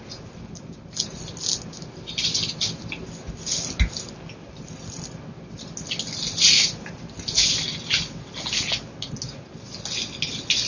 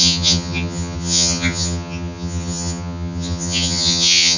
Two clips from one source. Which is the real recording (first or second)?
first